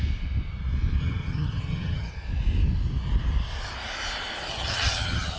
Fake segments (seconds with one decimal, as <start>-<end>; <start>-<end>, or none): 1.0-2.1; 4.5-5.4